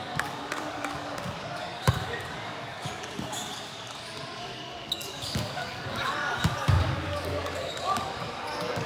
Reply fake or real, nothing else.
fake